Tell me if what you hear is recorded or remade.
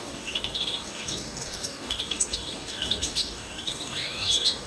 remade